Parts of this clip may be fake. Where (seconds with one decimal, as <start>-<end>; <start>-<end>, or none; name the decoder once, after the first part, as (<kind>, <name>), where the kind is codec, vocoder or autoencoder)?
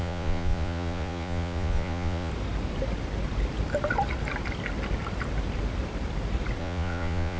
0.0-2.3 (vocoder, Vocos); 6.6-7.4